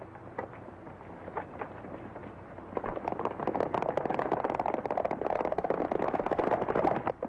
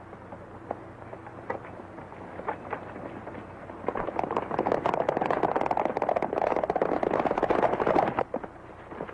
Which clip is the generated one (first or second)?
first